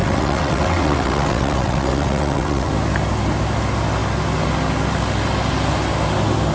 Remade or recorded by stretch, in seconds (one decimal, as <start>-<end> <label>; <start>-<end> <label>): 0.0-2.7 remade; 2.7-6.5 recorded